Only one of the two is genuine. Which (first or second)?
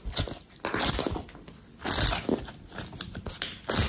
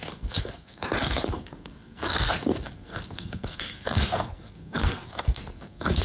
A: first